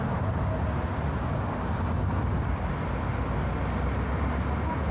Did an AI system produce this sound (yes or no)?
no